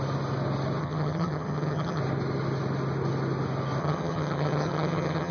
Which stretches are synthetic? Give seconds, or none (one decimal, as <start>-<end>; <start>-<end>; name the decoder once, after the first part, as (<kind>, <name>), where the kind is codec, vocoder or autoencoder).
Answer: 0.8-2.0 (vocoder, HiFi-GAN); 3.8-5.3